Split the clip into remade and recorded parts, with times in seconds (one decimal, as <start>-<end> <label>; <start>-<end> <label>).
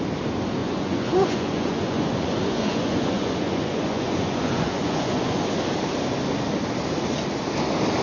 0.0-0.6 recorded; 0.6-5.4 remade; 5.4-8.0 recorded